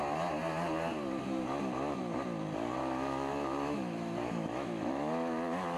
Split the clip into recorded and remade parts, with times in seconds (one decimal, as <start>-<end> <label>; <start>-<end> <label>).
0.0-2.8 recorded; 2.8-5.8 remade